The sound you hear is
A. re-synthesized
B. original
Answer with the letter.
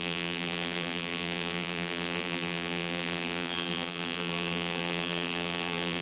A